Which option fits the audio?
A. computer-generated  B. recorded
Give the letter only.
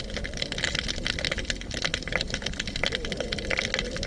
B